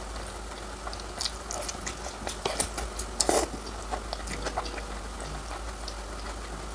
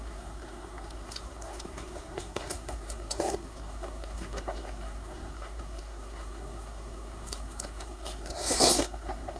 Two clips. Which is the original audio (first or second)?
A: first